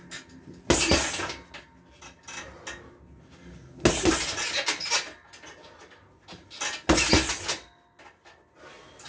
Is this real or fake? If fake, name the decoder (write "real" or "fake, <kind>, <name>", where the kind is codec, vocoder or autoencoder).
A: real